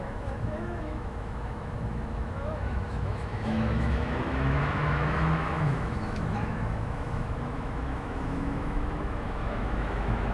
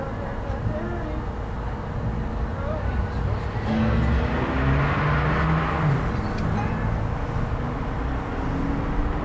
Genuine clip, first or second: second